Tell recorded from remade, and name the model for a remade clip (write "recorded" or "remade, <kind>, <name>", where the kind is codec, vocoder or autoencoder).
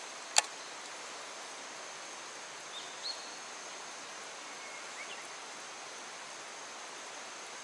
recorded